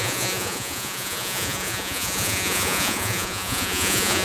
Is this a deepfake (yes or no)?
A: yes